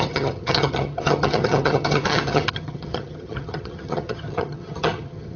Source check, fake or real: fake